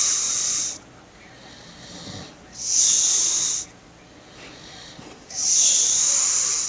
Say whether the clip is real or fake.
real